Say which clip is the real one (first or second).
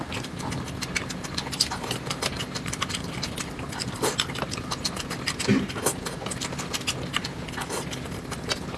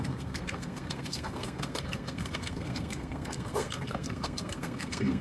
first